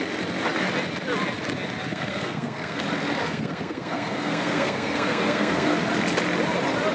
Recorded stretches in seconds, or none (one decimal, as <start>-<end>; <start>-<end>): 0.0-1.9; 2.8-3.2; 5.8-6.9